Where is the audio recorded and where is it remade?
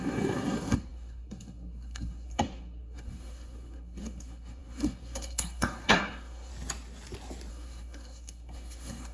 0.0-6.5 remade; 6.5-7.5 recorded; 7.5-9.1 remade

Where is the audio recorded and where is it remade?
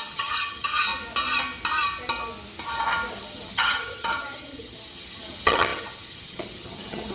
0.0-0.9 remade; 0.9-3.1 recorded; 3.1-7.1 remade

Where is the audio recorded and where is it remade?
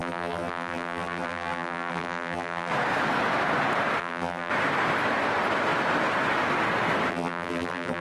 0.0-2.7 remade; 2.7-4.0 recorded; 4.0-4.5 remade; 4.5-7.1 recorded; 7.1-8.0 remade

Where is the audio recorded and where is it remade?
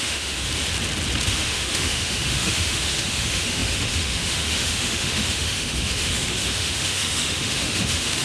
0.0-0.5 remade; 0.5-1.3 recorded; 1.3-8.2 remade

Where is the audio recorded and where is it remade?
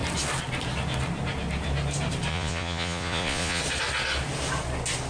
0.0-2.3 recorded; 2.3-3.6 remade; 3.6-5.1 recorded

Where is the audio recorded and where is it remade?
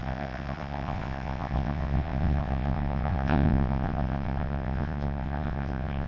0.0-6.1 remade